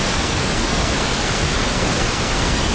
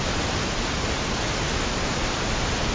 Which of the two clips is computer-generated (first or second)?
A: first